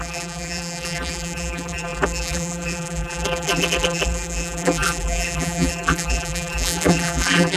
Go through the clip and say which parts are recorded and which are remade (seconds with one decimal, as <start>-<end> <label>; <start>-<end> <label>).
0.0-7.6 remade